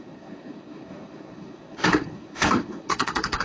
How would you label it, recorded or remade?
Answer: remade